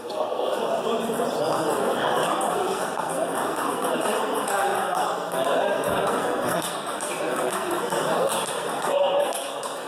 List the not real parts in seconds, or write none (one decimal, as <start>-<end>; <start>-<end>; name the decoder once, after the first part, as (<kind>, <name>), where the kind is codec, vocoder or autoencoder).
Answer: 0.0-0.7 (codec, SNAC); 1.4-9.9